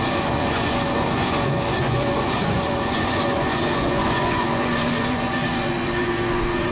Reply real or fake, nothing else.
fake